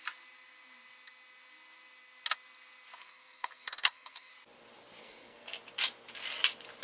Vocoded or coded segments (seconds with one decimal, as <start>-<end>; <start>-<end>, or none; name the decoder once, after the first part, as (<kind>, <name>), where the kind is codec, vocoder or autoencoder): 3.0-4.3 (codec, SNAC); 5.0-5.6